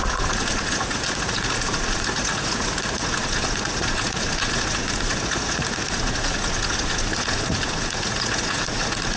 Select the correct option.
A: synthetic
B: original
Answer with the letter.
A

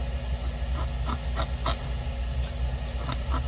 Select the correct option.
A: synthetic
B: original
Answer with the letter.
B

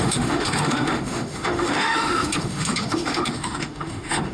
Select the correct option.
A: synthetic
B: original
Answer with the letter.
A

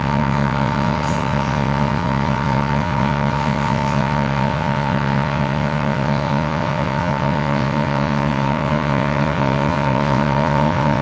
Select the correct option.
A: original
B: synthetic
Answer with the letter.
B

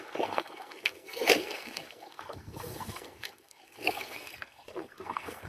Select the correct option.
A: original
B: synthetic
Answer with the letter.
B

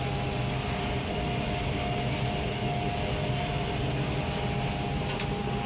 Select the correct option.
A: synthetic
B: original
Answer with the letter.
B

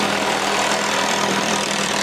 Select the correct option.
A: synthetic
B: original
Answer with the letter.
A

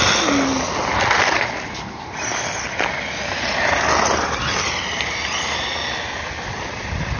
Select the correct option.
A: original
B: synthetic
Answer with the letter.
A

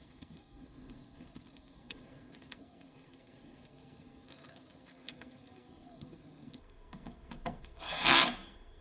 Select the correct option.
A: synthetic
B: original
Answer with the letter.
A